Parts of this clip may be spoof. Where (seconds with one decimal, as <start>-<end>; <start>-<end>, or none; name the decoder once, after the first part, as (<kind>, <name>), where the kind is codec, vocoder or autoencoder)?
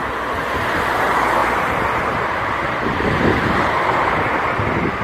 1.4-4.4 (vocoder, BigVGAN v2)